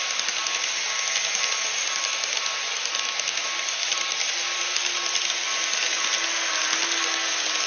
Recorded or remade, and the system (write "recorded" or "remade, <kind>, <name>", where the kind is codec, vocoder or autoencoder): recorded